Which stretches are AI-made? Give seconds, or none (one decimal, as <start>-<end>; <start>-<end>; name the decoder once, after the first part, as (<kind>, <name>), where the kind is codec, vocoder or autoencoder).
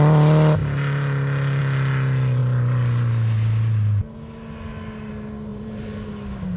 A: 5.5-6.1 (vocoder, BigVGAN v2)